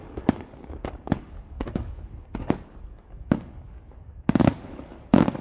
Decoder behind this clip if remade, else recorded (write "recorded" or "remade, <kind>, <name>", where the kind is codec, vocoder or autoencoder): remade, codec, DAC